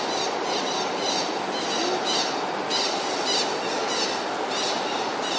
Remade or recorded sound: recorded